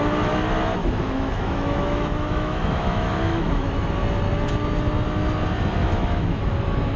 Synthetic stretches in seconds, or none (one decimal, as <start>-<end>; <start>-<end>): 0.8-3.9; 5.8-6.5

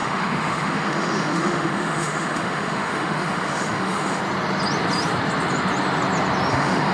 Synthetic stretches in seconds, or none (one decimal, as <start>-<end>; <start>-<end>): 0.0-4.2; 6.5-6.9

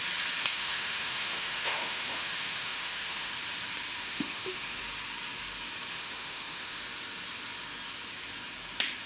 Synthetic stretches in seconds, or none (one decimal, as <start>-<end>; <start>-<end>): 0.4-3.3; 4.0-4.8; 5.9-6.8

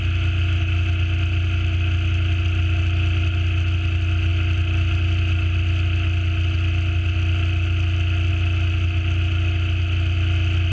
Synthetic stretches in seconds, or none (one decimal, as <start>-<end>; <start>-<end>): none

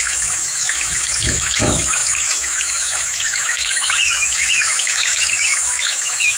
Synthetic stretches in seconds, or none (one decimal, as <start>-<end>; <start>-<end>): 0.0-6.4

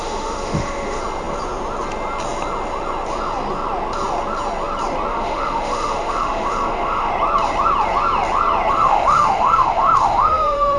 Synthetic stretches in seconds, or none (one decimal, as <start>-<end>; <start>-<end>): 0.0-1.0; 5.1-7.1; 8.7-10.8